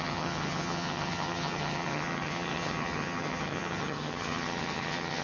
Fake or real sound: fake